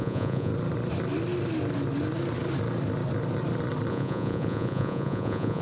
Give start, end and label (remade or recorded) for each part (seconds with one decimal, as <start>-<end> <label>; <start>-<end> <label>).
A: 0.0-0.5 remade; 0.5-3.9 recorded; 3.9-5.6 remade